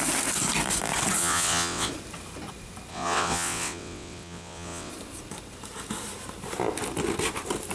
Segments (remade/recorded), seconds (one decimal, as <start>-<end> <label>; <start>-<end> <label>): 0.0-1.2 recorded; 1.2-1.9 remade; 1.9-2.9 recorded; 2.9-4.9 remade; 4.9-7.7 recorded